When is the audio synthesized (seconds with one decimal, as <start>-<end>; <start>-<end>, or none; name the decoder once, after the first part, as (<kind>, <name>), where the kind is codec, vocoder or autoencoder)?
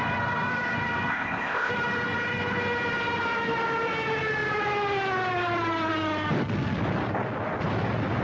1.1-1.7 (codec, ZipCodec)